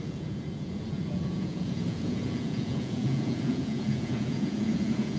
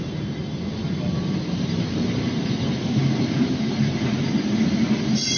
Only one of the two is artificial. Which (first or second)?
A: first